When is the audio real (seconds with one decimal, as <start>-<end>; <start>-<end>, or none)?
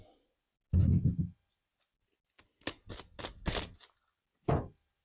0.0-5.0